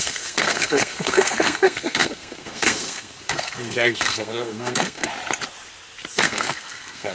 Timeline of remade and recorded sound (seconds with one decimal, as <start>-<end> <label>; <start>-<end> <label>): 0.0-5.1 remade; 5.1-6.1 recorded; 6.1-7.1 remade